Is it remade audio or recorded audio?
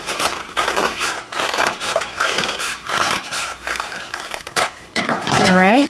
remade